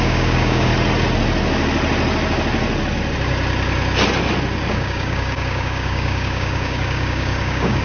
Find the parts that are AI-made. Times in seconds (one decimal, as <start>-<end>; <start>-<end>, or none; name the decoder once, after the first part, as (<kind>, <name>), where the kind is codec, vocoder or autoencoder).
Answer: 0.0-0.7 (codec, DAC); 4.7-7.8